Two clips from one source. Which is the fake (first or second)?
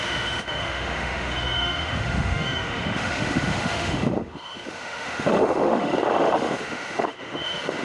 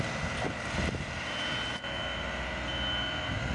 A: first